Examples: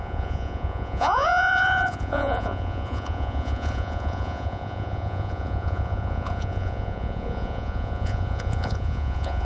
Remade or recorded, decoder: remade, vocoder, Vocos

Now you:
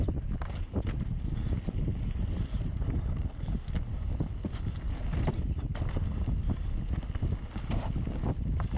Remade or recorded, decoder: recorded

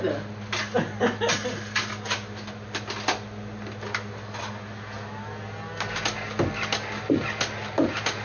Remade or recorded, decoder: recorded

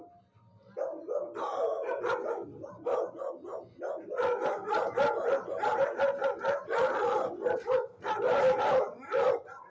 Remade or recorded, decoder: recorded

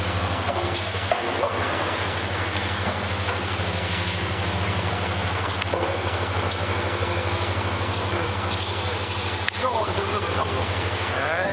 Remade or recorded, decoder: remade, codec, SNAC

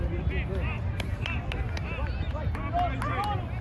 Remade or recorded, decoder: recorded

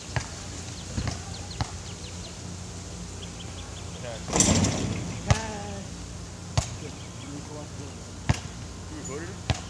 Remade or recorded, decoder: recorded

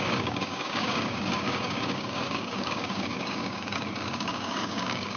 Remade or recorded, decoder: remade, codec, DAC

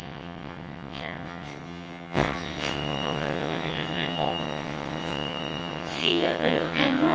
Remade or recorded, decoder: remade, vocoder, WaveNeXt